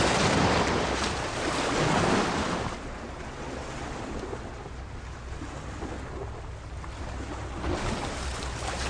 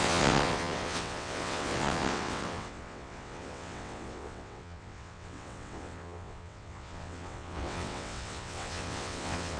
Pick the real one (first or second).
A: first